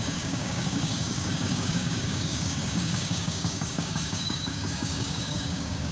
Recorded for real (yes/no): no